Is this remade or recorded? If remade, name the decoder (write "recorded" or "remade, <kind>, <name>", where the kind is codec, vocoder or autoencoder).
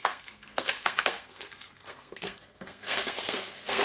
remade, codec, SNAC